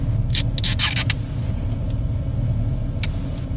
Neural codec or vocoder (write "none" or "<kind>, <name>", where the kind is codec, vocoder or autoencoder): none